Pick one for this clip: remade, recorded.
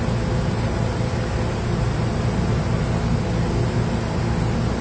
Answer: recorded